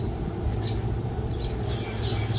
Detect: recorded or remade recorded